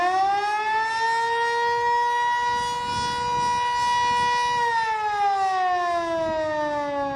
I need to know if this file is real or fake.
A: real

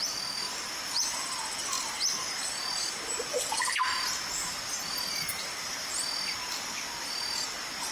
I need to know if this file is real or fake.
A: real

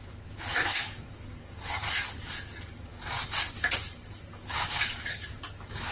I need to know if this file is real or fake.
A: fake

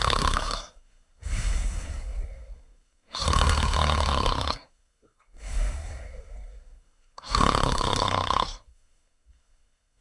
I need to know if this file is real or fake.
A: fake